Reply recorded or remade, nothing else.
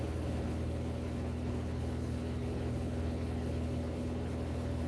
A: remade